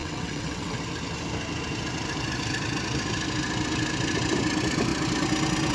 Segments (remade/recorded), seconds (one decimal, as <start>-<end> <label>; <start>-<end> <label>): 0.0-0.8 remade; 0.8-5.7 recorded